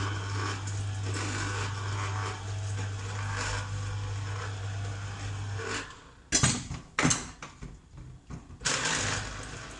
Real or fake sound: real